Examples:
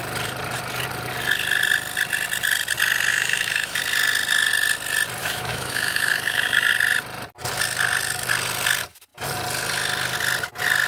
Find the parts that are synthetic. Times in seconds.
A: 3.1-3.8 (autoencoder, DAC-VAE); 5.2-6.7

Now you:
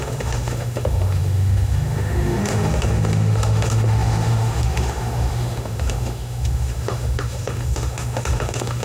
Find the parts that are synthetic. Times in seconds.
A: 0.0-8.8 (autoencoder, DAC-VAE)